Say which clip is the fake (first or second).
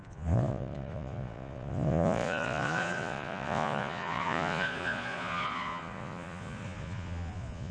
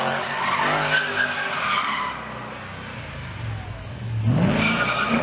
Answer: first